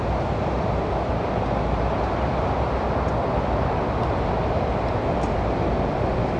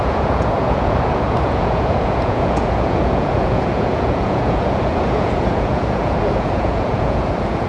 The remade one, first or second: second